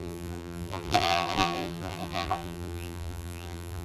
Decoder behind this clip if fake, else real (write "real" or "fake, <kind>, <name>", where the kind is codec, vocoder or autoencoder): fake, vocoder, BigVGAN v2